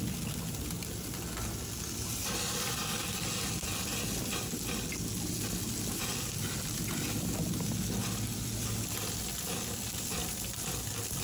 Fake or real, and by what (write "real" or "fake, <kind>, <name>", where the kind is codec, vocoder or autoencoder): real